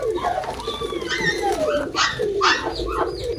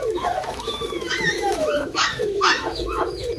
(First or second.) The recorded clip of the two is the first